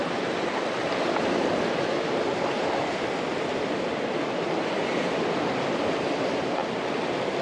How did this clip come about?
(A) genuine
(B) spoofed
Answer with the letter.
A